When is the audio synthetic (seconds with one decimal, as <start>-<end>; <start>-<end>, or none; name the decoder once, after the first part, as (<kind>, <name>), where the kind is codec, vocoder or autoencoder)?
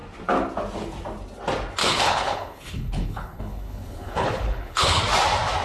1.8-5.0 (codec, HILCodec)